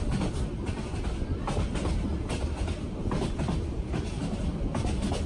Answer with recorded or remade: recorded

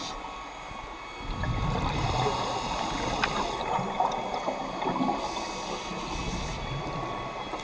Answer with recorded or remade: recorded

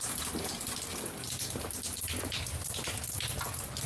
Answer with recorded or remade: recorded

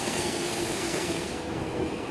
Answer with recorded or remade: remade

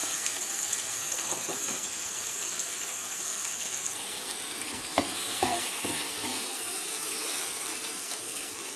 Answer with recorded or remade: remade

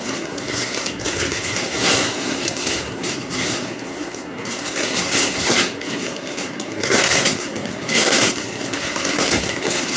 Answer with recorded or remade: remade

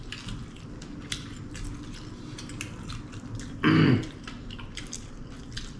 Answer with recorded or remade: recorded